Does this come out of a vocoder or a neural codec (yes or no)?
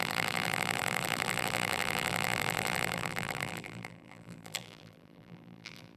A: yes